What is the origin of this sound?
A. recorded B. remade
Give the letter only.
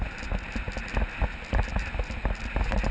A